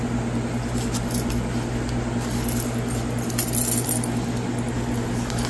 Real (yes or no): yes